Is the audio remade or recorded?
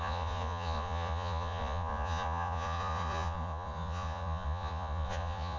remade